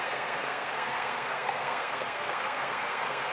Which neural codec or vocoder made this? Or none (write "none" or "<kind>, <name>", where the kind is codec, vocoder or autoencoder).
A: codec, SNAC